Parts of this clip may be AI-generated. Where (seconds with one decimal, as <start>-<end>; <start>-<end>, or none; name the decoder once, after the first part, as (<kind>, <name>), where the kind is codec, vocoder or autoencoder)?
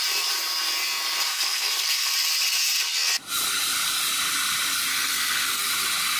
1.3-2.1 (codec, SNAC); 4.9-5.6